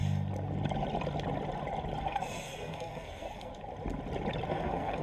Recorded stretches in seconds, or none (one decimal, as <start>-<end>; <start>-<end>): 0.0-2.0; 3.5-4.5